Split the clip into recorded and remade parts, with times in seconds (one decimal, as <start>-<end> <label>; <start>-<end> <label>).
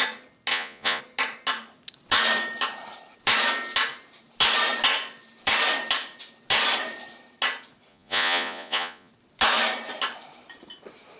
0.0-0.5 recorded; 0.5-1.0 remade; 1.0-7.9 recorded; 7.9-9.1 remade; 9.1-11.2 recorded